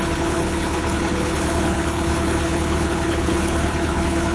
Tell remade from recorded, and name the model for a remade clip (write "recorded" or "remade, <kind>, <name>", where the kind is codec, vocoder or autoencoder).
remade, codec, HILCodec